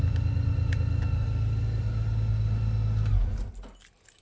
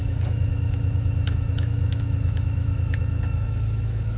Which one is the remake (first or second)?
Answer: second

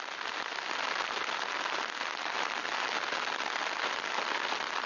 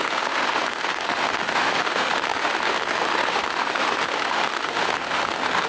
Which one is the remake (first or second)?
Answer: second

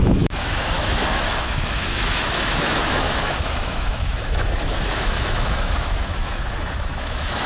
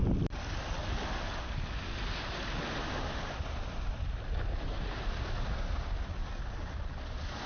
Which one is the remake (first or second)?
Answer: first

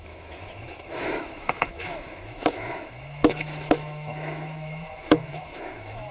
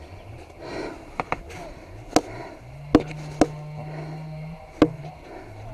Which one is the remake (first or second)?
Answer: first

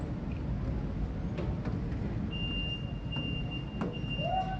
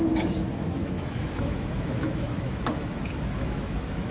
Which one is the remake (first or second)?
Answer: second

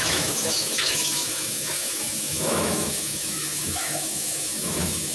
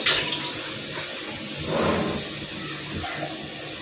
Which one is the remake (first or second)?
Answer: first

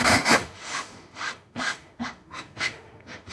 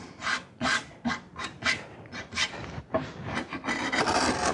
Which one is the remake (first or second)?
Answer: first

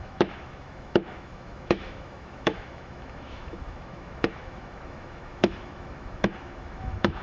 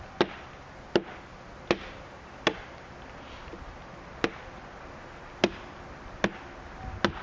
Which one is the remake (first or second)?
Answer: first